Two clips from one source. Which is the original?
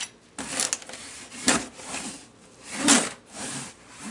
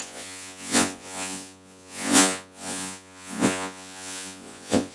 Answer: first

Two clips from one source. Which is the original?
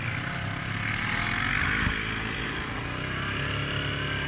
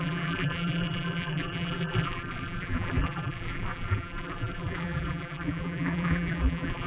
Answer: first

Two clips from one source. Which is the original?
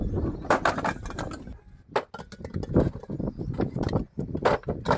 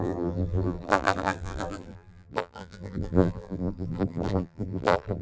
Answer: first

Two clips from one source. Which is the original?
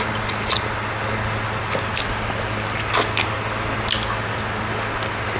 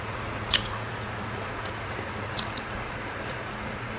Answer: first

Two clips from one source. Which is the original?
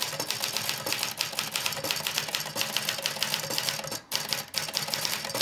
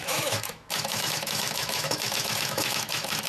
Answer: first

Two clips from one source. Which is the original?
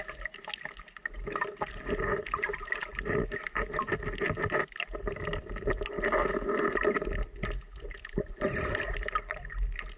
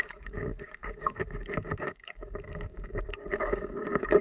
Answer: first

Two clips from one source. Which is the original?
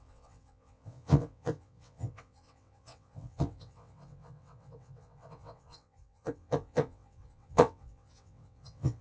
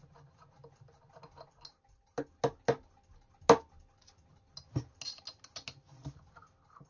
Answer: second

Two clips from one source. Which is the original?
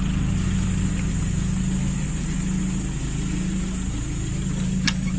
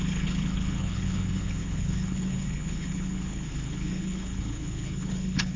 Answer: first